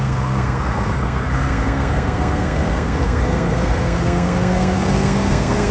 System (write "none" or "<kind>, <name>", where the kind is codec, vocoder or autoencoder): codec, SNAC